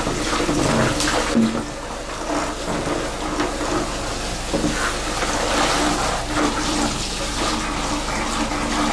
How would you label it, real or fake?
real